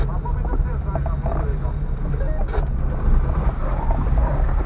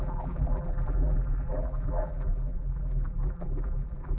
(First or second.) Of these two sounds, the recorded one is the first